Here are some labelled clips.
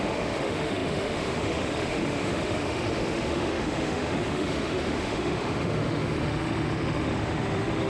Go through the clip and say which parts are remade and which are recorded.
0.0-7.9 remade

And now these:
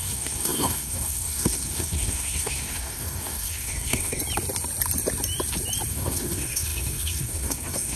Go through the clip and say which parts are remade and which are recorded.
0.0-4.2 remade; 4.2-5.9 recorded; 5.9-8.0 remade

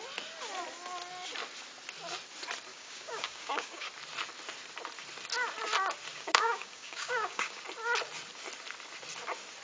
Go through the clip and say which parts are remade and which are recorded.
0.0-2.7 recorded; 2.7-3.9 remade; 3.9-6.1 recorded; 6.1-7.6 remade; 7.6-9.6 recorded

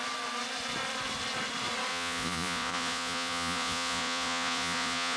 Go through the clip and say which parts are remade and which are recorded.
0.0-1.9 recorded; 1.9-5.2 remade

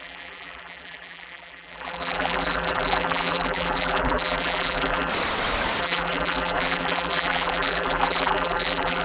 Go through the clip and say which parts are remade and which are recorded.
0.0-5.1 remade; 5.1-5.8 recorded; 5.8-9.0 remade